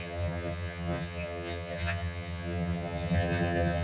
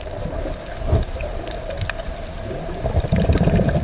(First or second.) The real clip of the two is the second